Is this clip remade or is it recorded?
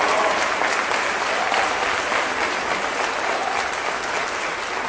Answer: recorded